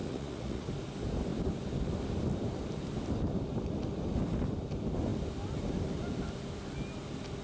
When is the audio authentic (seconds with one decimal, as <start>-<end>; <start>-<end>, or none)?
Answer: 0.7-7.4